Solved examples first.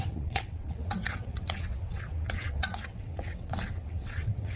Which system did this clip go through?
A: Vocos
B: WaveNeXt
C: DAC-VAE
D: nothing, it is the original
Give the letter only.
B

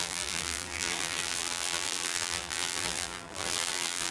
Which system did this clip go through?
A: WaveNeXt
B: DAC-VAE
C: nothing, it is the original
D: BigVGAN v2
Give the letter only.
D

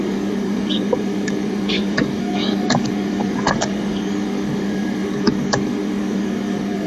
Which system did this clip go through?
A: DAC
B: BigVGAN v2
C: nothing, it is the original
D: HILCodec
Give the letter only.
A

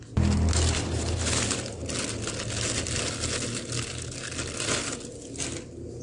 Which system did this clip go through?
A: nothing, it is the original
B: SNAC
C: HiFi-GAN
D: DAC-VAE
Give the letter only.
A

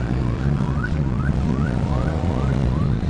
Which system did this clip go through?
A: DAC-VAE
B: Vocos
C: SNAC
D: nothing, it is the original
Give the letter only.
B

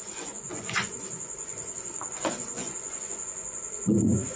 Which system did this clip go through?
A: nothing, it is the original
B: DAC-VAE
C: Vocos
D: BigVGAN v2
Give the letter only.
C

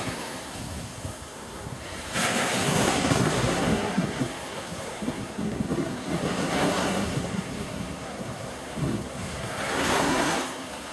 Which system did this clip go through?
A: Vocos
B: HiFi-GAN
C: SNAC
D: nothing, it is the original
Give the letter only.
C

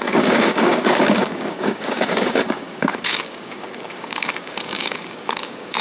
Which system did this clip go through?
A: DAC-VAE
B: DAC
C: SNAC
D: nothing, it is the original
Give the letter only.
B